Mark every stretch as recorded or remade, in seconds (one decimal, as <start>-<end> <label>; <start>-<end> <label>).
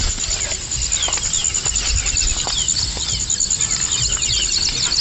0.0-5.0 recorded